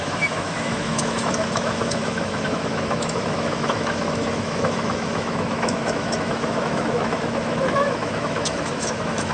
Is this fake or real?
fake